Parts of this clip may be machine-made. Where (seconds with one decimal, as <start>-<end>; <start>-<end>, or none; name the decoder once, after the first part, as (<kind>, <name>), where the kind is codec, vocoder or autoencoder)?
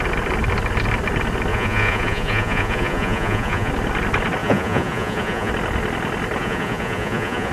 1.5-3.7 (vocoder, Vocos); 4.4-5.5; 6.4-7.5